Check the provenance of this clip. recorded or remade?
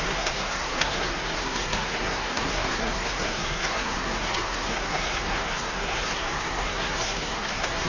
remade